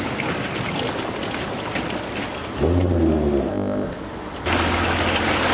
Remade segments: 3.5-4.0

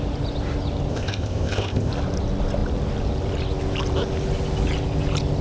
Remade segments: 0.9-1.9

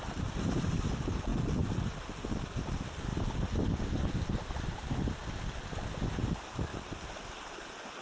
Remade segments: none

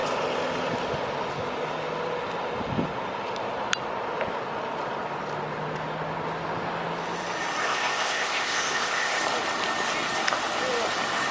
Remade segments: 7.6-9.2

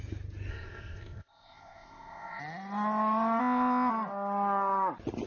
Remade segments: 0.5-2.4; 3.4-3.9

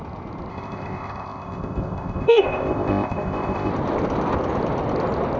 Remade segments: 0.5-3.7